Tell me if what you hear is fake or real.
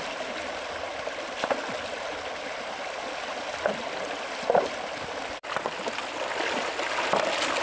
real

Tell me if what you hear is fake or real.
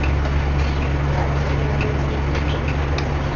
real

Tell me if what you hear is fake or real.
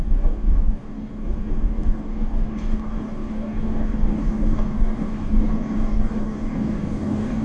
fake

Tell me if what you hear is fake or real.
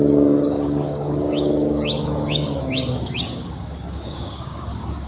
fake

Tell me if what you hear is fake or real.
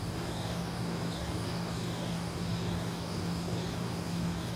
fake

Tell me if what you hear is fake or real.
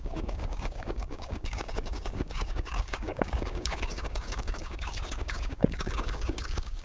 fake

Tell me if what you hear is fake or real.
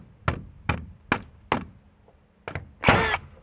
real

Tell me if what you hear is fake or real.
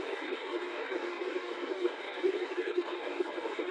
fake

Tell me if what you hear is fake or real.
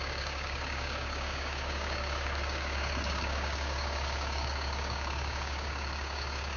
fake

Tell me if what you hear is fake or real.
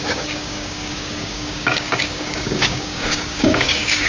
fake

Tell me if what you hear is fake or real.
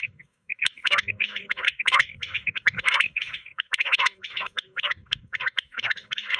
fake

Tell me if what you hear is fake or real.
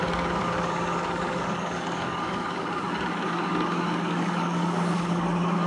fake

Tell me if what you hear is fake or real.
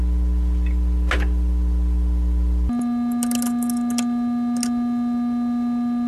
real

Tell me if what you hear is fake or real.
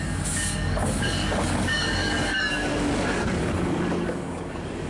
fake